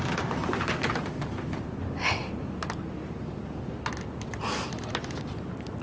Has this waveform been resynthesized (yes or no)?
no